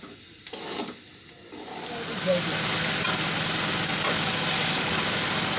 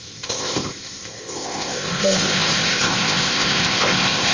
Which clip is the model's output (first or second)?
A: second